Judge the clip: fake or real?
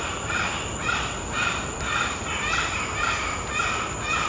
real